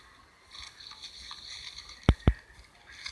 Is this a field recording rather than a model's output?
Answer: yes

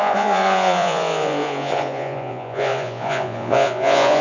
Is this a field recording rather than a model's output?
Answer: no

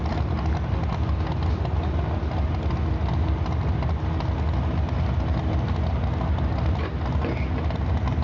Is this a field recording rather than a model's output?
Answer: yes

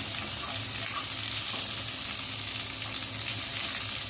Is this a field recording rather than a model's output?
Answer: yes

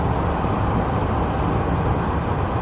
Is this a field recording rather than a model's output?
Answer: yes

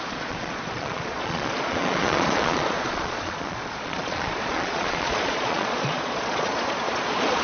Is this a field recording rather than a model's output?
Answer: no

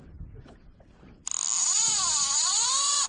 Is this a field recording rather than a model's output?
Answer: yes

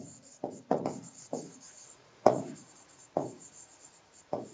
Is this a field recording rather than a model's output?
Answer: no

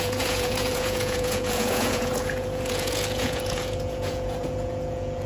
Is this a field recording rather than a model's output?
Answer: no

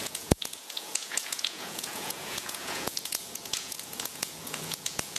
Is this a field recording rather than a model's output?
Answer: no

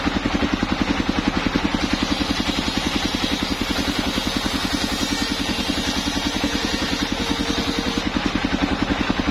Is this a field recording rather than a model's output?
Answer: yes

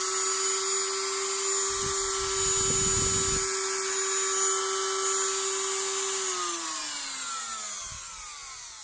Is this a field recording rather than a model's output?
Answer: yes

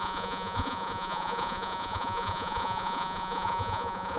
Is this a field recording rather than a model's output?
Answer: no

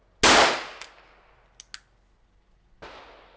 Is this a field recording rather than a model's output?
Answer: yes